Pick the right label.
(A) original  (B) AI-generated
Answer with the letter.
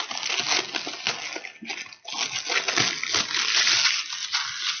A